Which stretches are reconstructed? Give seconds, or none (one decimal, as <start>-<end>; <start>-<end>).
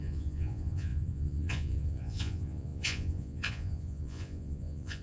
0.0-5.0